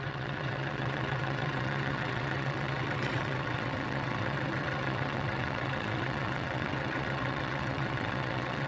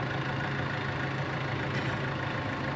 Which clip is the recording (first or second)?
second